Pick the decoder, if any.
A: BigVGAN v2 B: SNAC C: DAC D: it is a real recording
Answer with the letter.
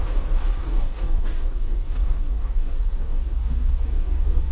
C